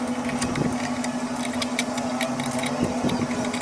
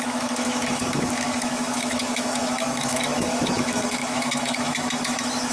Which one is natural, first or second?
first